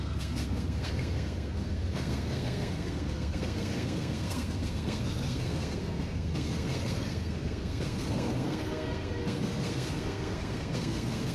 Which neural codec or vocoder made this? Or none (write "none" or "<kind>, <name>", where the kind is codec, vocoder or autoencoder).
codec, SNAC